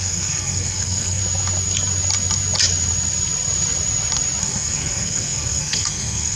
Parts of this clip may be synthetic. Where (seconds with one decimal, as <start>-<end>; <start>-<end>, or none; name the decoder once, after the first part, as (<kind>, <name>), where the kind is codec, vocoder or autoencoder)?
0.0-1.2 (codec, SNAC); 4.4-6.4